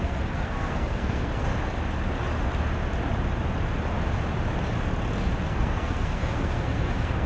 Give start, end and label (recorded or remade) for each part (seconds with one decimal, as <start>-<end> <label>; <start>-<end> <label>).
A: 0.0-1.5 remade; 1.5-5.4 recorded; 5.4-7.3 remade